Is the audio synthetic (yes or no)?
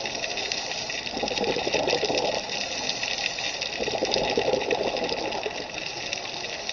no